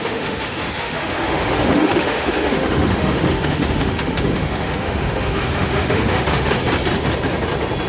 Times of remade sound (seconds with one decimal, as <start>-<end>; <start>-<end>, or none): 0.0-6.6